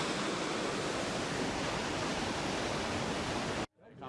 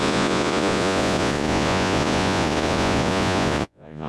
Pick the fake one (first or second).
second